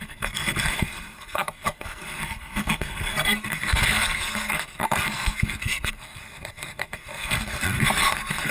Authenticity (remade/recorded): remade